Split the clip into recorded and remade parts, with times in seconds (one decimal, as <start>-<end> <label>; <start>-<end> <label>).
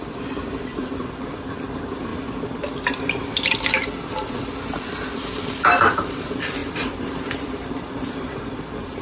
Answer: 0.0-2.1 remade; 2.1-5.7 recorded; 5.7-9.0 remade